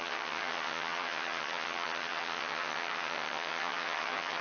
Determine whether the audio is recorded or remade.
remade